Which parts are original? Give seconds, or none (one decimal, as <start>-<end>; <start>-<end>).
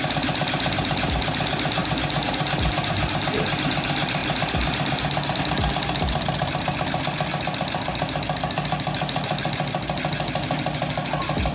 0.0-11.5